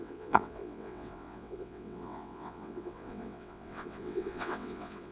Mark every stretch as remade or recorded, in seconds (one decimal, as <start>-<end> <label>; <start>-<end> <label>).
0.0-5.1 remade